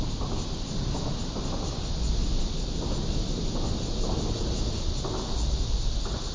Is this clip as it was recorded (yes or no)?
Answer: yes